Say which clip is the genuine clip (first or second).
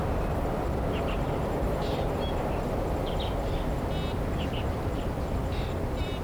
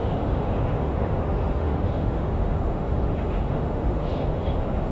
first